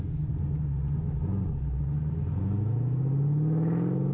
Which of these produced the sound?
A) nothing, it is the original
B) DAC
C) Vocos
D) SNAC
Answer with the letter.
A